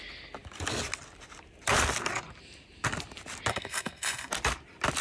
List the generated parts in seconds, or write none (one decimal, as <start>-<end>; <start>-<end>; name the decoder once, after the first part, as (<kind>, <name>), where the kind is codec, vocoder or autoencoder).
3.5-4.3 (codec, SNAC)